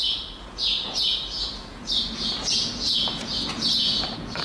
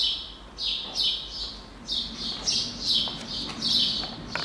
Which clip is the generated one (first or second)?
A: first